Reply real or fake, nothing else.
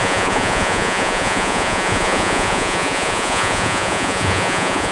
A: fake